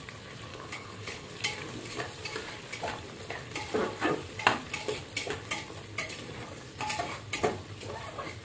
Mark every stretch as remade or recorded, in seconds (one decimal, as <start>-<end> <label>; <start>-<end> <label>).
0.0-0.5 recorded; 0.5-1.3 remade; 1.3-8.4 recorded